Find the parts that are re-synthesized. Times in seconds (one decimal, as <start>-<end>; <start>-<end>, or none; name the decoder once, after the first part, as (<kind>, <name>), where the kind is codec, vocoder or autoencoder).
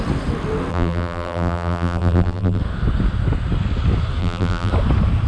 0.7-2.6 (vocoder, BigVGAN v2); 4.2-4.7